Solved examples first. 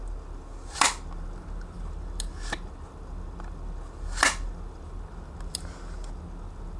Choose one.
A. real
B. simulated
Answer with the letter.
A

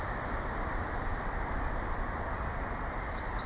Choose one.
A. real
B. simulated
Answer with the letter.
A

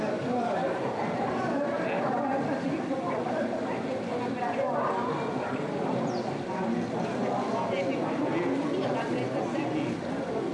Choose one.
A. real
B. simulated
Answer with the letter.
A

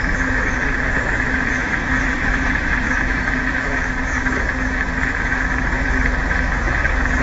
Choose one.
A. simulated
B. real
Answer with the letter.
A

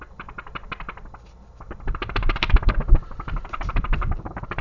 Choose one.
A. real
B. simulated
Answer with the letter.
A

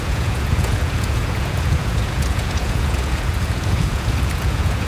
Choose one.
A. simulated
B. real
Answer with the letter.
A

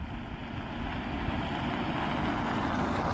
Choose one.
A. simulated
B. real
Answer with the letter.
B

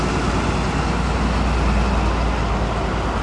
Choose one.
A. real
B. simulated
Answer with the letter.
A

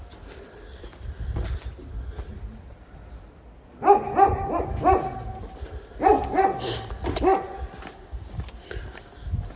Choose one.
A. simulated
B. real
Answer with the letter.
B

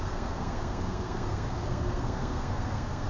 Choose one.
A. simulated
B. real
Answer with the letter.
A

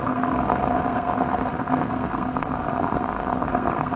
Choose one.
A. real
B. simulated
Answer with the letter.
B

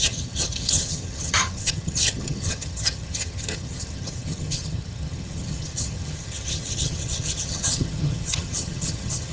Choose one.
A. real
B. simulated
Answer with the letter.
B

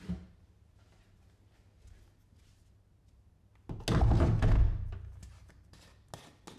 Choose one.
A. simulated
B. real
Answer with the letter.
B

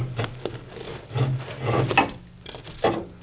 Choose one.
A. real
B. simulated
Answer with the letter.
A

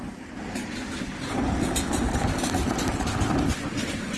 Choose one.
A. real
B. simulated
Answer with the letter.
A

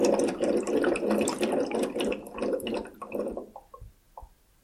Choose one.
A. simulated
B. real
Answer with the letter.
B